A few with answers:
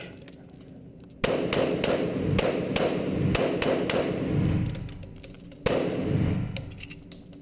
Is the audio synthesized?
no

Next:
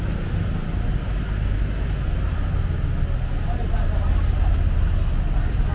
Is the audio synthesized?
no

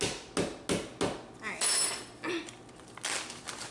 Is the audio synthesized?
no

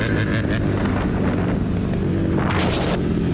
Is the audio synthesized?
no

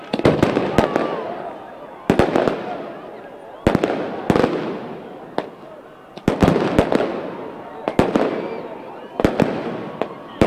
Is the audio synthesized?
no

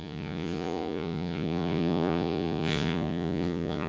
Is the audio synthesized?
yes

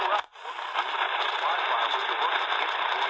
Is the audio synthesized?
no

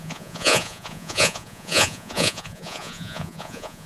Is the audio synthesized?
yes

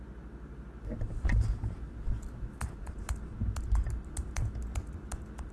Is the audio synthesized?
no